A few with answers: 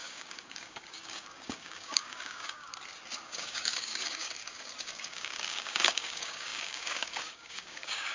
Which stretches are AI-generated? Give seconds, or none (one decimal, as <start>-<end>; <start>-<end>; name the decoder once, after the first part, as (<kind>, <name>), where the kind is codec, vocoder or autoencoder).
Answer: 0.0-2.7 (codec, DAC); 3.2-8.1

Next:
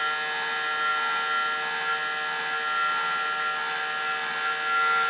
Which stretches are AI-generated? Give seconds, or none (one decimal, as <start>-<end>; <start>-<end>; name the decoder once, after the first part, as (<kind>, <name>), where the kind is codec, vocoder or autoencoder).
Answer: none

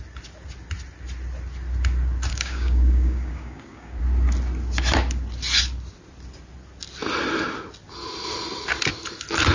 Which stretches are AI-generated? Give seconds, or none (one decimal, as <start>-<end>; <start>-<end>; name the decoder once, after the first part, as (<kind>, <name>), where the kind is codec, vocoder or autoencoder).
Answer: 2.3-4.0 (codec, DAC)

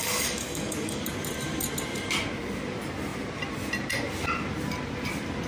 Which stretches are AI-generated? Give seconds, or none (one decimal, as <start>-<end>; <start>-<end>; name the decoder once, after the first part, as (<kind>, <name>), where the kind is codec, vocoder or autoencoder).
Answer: 0.0-1.0 (codec, DAC)

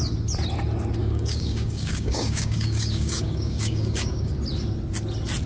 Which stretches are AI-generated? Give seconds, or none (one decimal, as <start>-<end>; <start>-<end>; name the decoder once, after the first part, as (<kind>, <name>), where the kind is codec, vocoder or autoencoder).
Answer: 1.0-4.3 (codec, DAC)

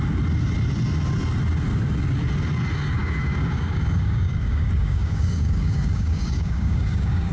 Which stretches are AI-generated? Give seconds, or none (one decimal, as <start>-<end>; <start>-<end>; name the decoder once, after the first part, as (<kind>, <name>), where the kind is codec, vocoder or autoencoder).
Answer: 3.0-7.3 (codec, DAC)

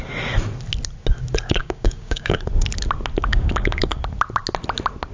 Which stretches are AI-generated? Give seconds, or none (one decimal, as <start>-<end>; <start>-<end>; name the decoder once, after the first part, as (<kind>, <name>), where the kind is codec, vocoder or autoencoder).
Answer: 1.6-2.4 (codec, DAC); 3.2-4.0